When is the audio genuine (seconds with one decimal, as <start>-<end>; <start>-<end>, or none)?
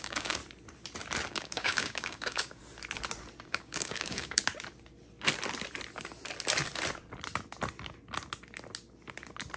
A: 0.4-1.3; 2.6-3.5; 4.4-9.6